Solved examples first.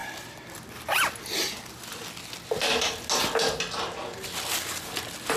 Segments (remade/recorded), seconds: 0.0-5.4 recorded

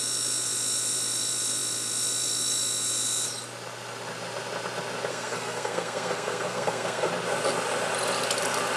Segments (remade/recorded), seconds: 0.0-5.1 recorded; 5.1-7.1 remade; 7.1-8.8 recorded

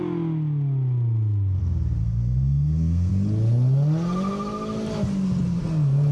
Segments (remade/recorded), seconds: 0.0-2.0 recorded; 2.0-3.1 remade; 3.1-6.1 recorded

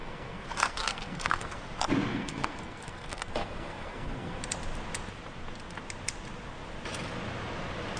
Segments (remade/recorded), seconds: 0.0-1.6 remade; 1.6-2.1 recorded; 2.1-4.4 remade; 4.4-8.0 recorded

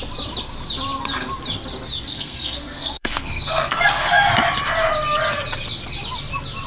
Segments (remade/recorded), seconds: 0.0-2.1 recorded; 2.1-4.3 remade; 4.3-6.7 recorded

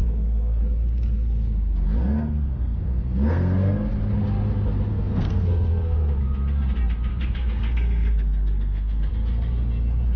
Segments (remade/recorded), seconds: 0.0-0.6 remade; 0.6-2.0 recorded; 2.0-3.9 remade; 3.9-4.9 recorded; 4.9-6.2 remade; 6.2-7.1 recorded; 7.1-9.1 remade; 9.1-10.2 recorded

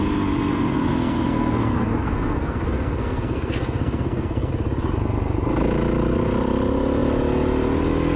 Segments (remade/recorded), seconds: 0.0-0.5 recorded; 0.5-4.5 remade; 4.5-8.2 recorded